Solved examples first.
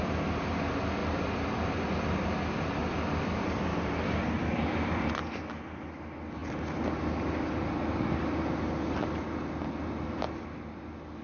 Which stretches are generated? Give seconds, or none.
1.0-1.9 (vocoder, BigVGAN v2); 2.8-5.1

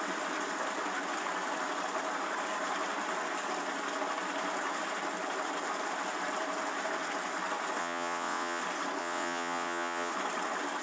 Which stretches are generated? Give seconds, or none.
7.8-8.6 (vocoder, WaveNeXt); 9.0-10.1

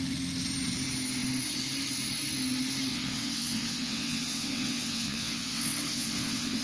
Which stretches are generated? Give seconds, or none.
2.9-6.6 (vocoder, WaveNeXt)

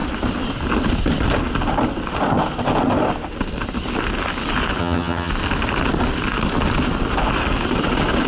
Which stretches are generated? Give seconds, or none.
4.8-5.3 (vocoder, HiFi-GAN)

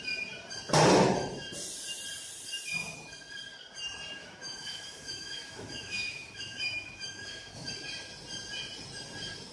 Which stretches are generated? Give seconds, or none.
4.2-7.7 (autoencoder, DAC-VAE)

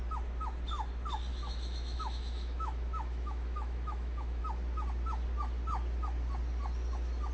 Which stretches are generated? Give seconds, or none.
1.3-4.4 (autoencoder, DAC-VAE)